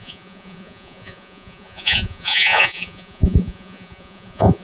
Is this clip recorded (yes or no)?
no